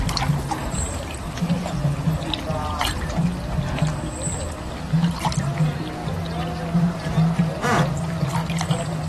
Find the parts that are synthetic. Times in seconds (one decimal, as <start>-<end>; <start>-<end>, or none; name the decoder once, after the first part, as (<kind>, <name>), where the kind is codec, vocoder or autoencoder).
0.6-1.7 (vocoder, BigVGAN v2); 2.6-3.2